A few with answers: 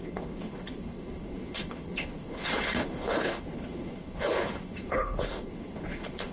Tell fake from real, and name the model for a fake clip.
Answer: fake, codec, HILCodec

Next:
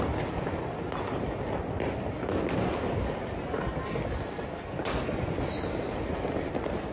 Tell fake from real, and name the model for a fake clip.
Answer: real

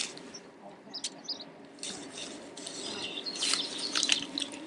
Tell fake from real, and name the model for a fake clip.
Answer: real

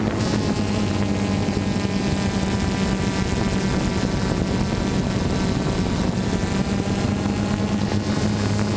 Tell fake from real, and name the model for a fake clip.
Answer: real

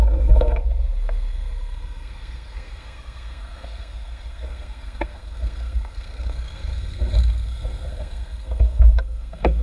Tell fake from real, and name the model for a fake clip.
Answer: fake, codec, SNAC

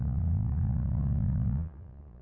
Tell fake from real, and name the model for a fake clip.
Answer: fake, vocoder, Vocos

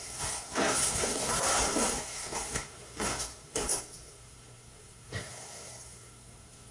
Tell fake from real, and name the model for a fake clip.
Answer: fake, codec, SNAC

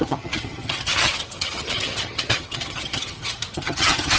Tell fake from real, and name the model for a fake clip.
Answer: fake, vocoder, HiFi-GAN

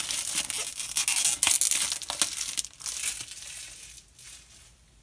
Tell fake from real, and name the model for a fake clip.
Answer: real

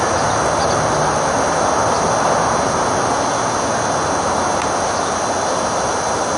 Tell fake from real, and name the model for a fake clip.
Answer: real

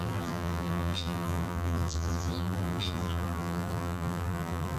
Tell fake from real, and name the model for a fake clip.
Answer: fake, vocoder, BigVGAN v2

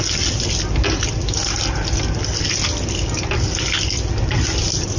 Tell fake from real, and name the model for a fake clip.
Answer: real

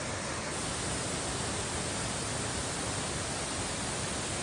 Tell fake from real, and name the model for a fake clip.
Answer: real